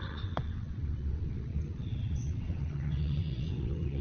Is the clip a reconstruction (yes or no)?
yes